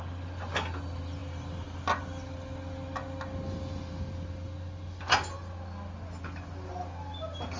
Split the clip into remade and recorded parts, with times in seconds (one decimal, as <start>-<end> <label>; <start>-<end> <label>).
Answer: 0.0-7.6 recorded